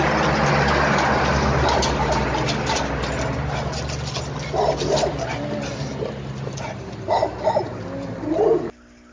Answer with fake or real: real